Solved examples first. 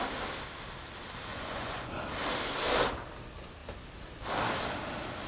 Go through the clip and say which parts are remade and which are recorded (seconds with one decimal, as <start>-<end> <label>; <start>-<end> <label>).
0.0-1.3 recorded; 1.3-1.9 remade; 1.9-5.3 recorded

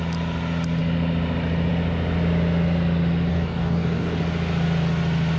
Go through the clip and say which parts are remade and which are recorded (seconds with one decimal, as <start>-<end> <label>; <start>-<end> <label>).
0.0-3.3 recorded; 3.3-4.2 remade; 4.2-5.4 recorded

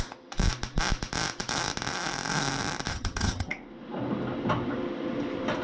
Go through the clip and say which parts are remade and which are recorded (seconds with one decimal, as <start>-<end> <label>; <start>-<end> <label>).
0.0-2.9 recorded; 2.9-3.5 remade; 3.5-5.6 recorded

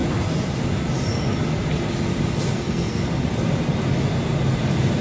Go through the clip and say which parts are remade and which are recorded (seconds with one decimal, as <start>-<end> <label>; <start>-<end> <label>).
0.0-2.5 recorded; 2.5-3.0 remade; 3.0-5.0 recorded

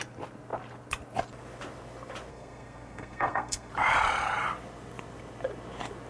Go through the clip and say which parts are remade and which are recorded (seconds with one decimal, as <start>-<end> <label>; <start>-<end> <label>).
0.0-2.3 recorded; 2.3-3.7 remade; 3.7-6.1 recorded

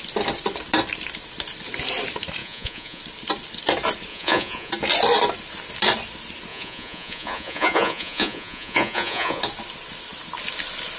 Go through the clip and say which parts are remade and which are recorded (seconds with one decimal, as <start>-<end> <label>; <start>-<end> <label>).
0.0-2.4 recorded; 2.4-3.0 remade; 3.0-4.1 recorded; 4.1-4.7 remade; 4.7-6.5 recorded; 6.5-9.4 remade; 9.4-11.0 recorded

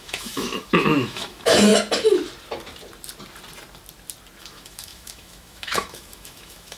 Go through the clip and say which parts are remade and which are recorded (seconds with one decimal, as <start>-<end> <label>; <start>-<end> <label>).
0.0-1.7 remade; 1.7-4.4 recorded; 4.4-6.8 remade

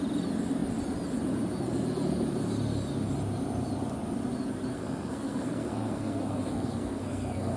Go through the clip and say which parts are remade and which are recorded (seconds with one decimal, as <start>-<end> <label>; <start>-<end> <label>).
0.0-4.7 recorded; 4.7-7.6 remade